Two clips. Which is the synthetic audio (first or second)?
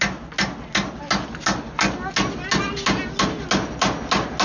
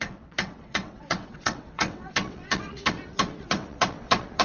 second